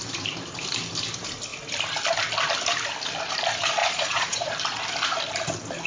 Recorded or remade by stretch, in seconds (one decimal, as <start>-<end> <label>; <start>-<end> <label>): 0.0-3.8 recorded; 3.8-4.5 remade; 4.5-5.9 recorded